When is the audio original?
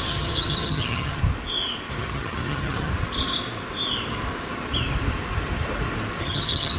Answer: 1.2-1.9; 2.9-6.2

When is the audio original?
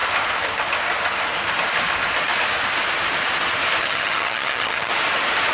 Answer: 0.0-3.8; 4.9-5.5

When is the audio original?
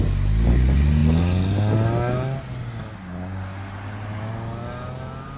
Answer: 0.0-5.4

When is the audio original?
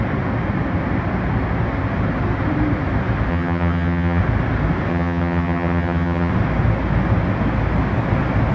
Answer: 0.0-3.3; 4.2-4.9; 6.3-8.5